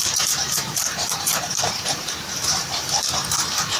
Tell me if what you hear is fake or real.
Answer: fake